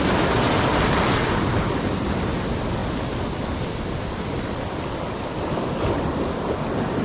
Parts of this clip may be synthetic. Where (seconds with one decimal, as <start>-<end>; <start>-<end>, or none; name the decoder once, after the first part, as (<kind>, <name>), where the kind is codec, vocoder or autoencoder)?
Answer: none